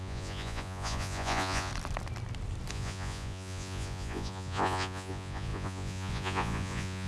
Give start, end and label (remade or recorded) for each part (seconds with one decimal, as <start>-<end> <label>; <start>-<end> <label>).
0.0-1.7 remade; 1.7-2.7 recorded; 2.7-7.1 remade